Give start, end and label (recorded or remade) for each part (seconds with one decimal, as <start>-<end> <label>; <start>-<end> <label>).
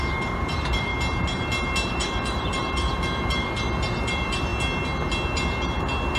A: 0.0-0.9 remade; 0.9-1.9 recorded; 1.9-4.5 remade; 4.5-6.2 recorded